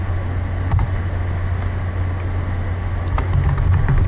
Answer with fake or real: real